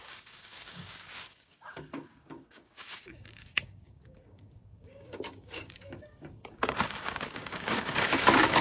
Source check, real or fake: fake